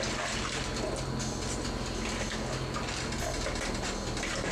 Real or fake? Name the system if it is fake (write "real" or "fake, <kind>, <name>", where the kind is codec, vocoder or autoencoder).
real